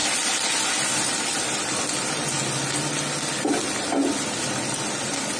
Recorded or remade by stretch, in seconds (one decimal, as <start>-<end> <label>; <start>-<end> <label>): 0.0-5.4 recorded